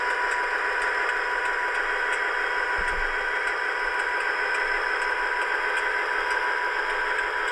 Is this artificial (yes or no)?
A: no